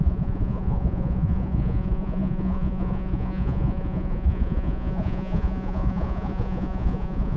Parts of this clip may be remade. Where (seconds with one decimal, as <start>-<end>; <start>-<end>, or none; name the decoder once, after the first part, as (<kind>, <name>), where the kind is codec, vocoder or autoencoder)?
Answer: 0.0-7.4 (vocoder, Vocos)